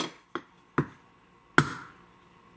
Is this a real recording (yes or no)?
yes